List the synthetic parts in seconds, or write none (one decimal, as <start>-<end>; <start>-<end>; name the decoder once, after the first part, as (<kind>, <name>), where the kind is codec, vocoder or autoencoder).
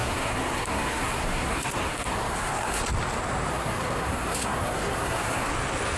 0.0-2.8 (codec, SNAC); 3.5-5.5